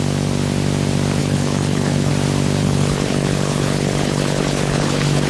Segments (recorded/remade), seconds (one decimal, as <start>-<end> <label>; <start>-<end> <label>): 0.0-1.2 recorded; 1.2-2.1 remade; 2.1-2.6 recorded; 2.6-5.3 remade